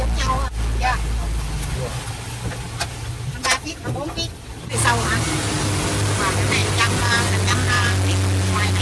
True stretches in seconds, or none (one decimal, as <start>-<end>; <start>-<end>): 0.0-8.8